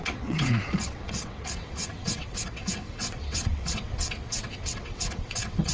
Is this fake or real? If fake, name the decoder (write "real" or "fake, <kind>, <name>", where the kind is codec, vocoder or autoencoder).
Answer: fake, vocoder, WaveNeXt